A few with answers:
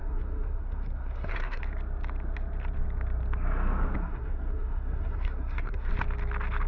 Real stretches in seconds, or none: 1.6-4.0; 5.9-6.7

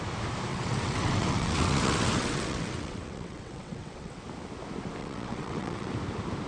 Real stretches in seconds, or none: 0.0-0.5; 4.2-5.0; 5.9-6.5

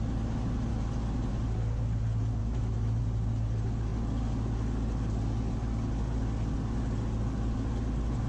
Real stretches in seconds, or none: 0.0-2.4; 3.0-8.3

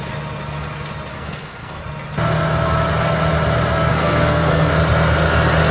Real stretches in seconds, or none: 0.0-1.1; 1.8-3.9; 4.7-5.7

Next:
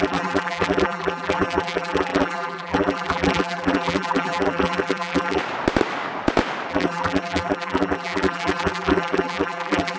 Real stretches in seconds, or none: 5.4-6.7

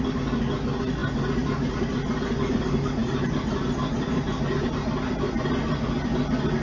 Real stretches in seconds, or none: 0.0-6.6

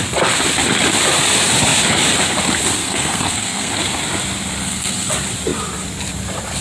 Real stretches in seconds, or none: 0.0-2.8; 3.7-4.6; 5.1-6.6